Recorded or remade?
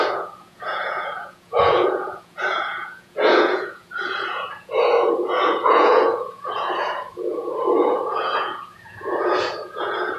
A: remade